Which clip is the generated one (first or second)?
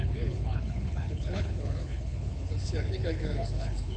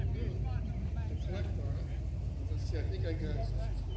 first